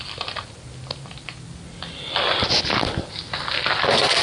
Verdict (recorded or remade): recorded